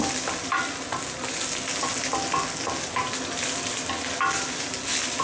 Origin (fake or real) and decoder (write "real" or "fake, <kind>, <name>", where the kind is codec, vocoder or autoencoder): real